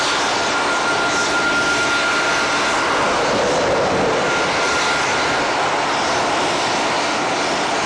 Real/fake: real